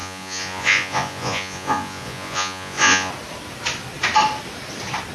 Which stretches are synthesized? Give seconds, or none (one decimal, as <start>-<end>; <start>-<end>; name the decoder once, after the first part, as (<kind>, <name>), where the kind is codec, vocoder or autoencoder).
0.0-3.1 (vocoder, Vocos)